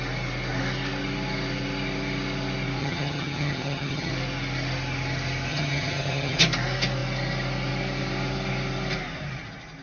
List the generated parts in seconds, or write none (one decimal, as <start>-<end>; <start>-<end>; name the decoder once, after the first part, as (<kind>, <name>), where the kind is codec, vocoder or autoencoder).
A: 2.8-4.1 (vocoder, HiFi-GAN); 5.5-6.4